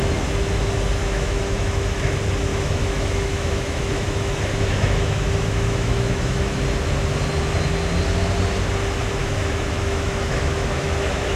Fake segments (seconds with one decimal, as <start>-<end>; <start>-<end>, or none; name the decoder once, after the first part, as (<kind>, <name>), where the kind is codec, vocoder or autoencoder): 1.0-2.0 (autoencoder, DAC-VAE); 2.5-6.6; 9.2-11.4